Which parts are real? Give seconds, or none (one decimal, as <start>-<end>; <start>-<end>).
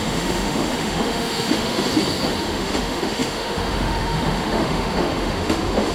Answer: 1.9-2.4